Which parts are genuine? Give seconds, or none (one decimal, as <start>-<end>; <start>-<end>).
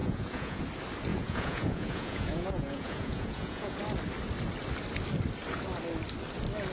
0.6-1.1; 3.8-6.7